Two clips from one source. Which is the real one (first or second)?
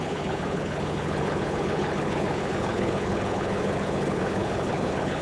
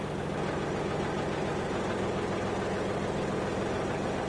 second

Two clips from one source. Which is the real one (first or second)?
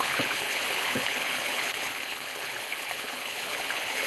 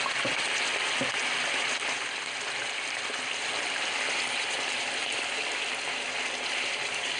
second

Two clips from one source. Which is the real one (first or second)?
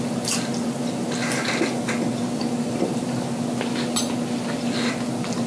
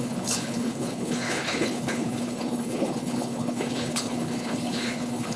first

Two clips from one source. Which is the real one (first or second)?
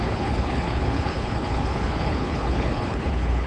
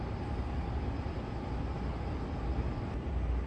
second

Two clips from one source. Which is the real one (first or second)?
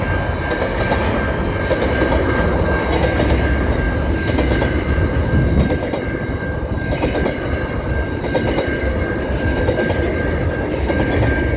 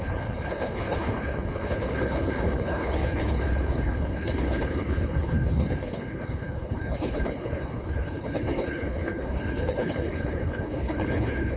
first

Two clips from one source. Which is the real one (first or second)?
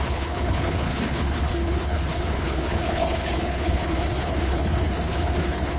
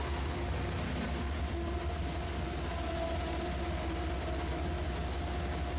second